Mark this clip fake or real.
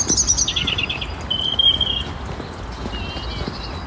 real